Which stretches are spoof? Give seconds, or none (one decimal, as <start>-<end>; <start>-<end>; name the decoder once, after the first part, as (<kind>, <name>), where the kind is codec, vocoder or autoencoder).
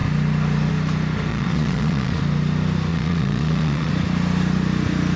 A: 1.3-2.2 (vocoder, Vocos); 2.9-3.9